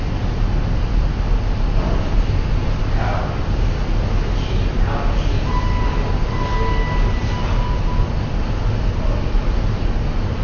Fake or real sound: real